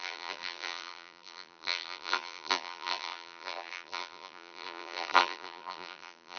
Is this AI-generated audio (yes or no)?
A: yes